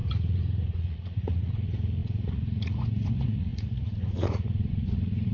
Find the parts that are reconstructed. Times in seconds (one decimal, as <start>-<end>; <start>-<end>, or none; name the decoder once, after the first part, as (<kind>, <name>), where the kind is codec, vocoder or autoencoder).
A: 0.0-5.3 (vocoder, Vocos)